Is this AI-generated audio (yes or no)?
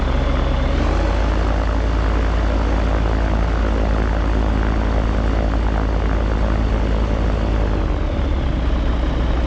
no